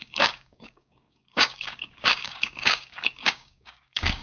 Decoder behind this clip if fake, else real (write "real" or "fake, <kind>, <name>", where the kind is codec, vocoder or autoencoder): fake, codec, DAC